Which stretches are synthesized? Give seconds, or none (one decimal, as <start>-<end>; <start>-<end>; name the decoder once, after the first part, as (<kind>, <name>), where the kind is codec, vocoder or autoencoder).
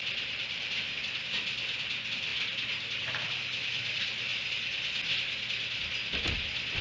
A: 0.0-2.3 (vocoder, BigVGAN v2); 3.0-4.3; 5.8-6.8